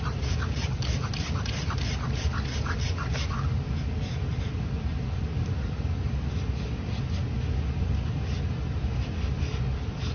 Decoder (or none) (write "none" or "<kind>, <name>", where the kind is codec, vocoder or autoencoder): none